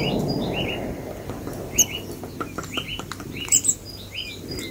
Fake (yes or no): no